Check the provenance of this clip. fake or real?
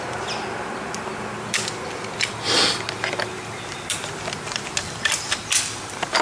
real